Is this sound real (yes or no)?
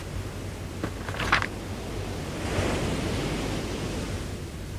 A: yes